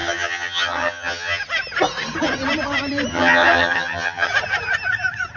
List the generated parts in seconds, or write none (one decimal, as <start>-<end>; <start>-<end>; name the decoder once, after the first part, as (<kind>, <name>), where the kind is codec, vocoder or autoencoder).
0.0-1.4 (vocoder, HiFi-GAN); 3.1-4.3